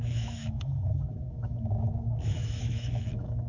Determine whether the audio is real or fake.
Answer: fake